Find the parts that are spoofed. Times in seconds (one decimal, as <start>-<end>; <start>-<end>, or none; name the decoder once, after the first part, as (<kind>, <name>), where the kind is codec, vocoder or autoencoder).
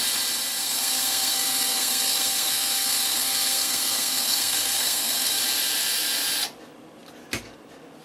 0.6-5.4 (codec, SNAC)